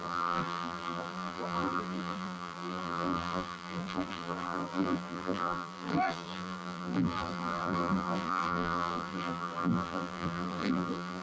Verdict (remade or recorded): remade